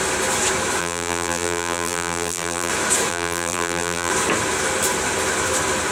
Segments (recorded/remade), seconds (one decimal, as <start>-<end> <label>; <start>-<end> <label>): 0.0-0.8 recorded; 0.8-2.7 remade; 2.7-3.1 recorded; 3.1-4.1 remade; 4.1-5.9 recorded